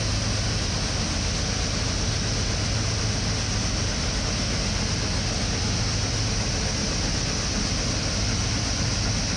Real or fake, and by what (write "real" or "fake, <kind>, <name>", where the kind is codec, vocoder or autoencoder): real